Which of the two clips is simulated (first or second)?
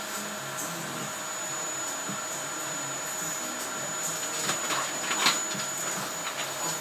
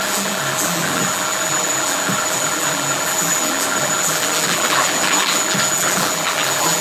second